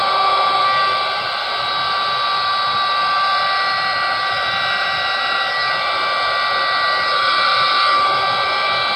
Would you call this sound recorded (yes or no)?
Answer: yes